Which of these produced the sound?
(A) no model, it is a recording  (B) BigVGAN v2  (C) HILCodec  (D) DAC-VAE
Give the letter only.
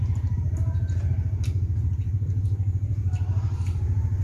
B